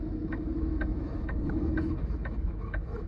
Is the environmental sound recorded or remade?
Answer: remade